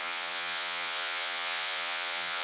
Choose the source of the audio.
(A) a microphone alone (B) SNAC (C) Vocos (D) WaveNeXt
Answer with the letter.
C